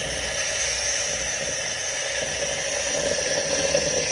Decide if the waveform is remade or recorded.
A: recorded